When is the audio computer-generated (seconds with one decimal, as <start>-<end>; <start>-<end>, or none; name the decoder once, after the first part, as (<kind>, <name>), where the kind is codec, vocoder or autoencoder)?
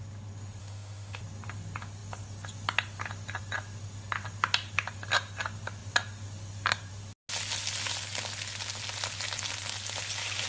0.6-1.2 (autoencoder, DAC-VAE)